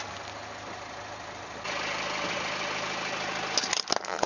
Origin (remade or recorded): recorded